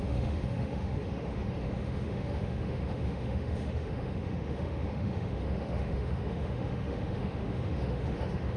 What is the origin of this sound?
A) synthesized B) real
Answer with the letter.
A